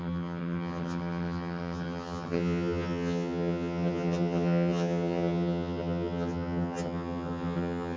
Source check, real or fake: fake